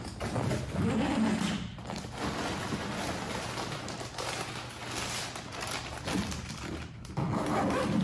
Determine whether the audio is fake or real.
real